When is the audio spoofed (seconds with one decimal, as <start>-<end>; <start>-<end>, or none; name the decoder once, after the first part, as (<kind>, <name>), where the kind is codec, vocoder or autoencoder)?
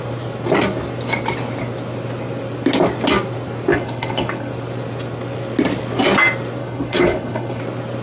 3.7-4.5 (codec, HILCodec); 6.6-7.6